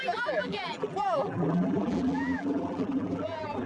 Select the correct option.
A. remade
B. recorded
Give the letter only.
A